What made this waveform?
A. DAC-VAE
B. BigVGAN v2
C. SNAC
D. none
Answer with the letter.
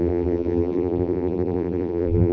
B